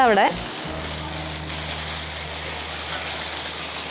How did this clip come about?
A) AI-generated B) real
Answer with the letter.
B